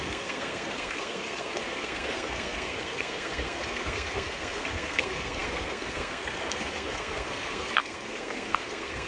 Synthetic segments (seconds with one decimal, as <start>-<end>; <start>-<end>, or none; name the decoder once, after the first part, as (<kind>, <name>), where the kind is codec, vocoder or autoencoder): 0.0-9.1 (codec, SNAC)